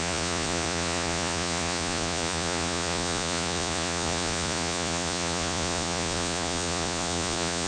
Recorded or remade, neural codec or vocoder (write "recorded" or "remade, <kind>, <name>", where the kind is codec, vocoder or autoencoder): remade, vocoder, Vocos